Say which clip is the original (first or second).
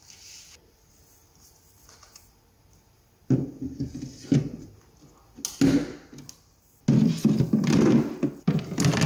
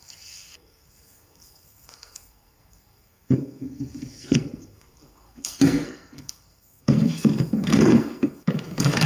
first